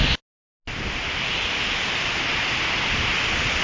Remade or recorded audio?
recorded